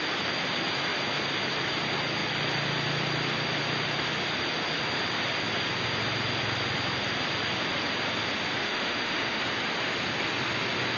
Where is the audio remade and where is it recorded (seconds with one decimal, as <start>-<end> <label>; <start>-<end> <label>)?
0.0-8.6 recorded; 8.6-9.4 remade; 9.4-11.0 recorded